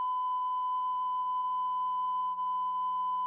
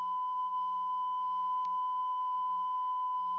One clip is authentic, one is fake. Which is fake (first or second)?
second